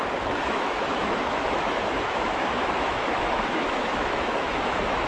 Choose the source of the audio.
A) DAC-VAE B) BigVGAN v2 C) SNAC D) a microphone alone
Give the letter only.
A